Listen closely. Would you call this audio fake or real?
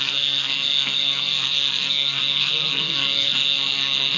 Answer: fake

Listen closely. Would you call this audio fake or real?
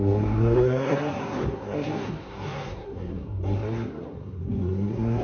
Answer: fake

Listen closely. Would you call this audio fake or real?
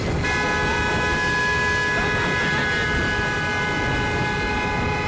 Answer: real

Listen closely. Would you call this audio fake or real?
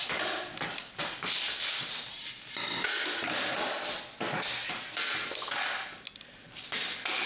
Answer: real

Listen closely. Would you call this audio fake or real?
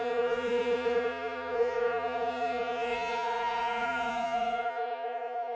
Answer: fake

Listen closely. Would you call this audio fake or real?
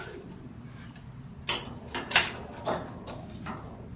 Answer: real